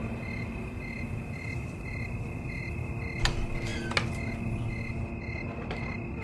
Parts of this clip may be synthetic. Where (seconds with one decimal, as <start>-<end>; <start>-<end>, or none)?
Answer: none